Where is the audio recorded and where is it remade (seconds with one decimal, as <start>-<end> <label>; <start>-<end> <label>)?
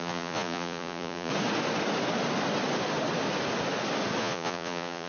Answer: 0.0-1.3 remade; 1.3-4.2 recorded; 4.2-5.1 remade